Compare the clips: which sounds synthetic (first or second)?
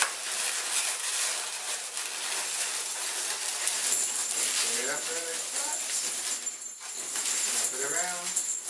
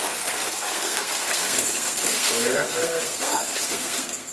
second